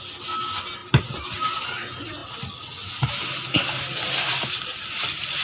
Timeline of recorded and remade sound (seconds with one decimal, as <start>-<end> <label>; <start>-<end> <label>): 0.0-5.4 recorded